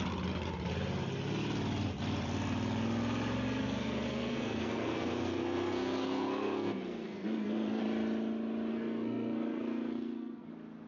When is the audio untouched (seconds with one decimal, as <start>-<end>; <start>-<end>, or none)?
0.0-3.6; 7.8-8.7; 10.5-10.9